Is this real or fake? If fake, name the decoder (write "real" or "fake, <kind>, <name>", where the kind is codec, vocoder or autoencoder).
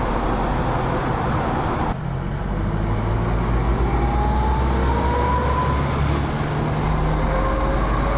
real